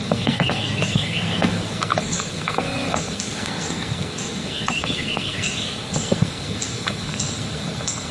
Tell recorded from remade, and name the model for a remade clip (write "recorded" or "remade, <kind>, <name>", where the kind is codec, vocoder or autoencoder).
remade, codec, SNAC